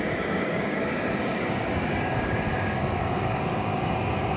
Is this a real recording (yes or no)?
no